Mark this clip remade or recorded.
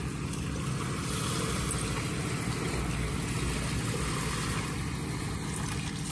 recorded